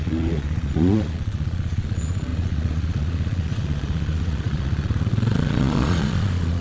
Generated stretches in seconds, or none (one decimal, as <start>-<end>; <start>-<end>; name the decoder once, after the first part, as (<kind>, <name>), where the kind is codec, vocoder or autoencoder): 0.0-6.6 (vocoder, Vocos)